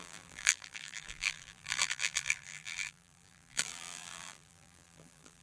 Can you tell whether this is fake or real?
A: fake